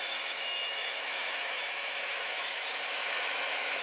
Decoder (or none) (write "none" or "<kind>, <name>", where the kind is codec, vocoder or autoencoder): autoencoder, DAC-VAE